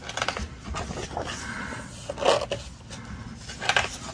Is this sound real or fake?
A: real